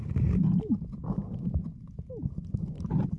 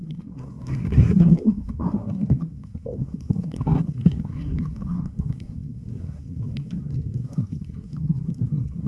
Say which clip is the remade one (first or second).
second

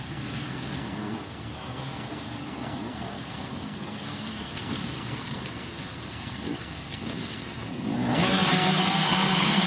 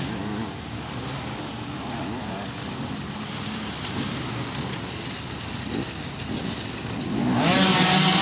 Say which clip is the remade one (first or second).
first